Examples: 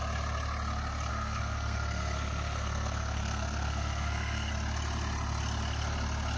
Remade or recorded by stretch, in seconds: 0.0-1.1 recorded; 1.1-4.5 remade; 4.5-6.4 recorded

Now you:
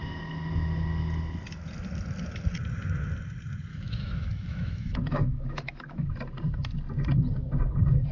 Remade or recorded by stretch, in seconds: 0.0-3.7 recorded; 3.7-6.1 remade; 6.1-8.1 recorded

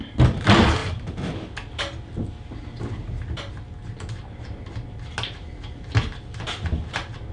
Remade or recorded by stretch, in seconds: 0.0-7.3 recorded